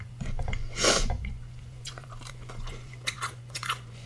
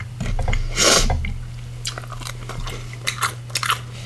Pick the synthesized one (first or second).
first